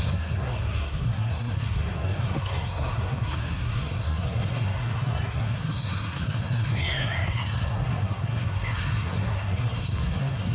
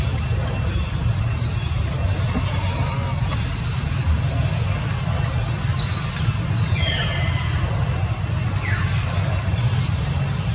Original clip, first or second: second